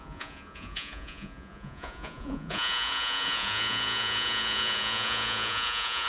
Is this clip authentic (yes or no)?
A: no